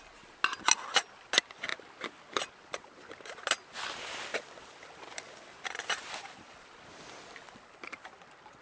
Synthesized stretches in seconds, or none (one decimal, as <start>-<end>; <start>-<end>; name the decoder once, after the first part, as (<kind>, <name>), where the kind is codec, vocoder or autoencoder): 4.3-6.9 (vocoder, BigVGAN v2)